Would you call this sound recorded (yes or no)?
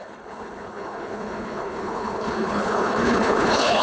no